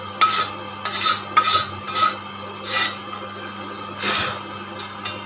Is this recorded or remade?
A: recorded